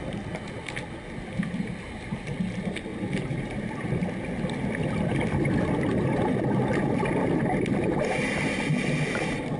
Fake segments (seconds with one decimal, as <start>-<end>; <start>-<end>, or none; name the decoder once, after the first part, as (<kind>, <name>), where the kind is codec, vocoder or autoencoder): 2.9-4.1 (vocoder, BigVGAN v2)